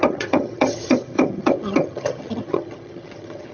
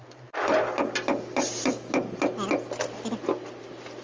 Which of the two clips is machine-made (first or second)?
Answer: first